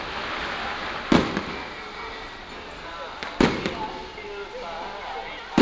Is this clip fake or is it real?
real